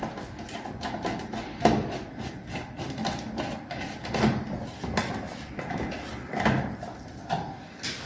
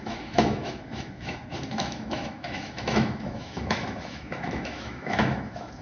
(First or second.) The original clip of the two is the first